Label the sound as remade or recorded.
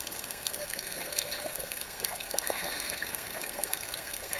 remade